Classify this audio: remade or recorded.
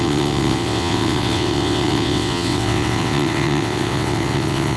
remade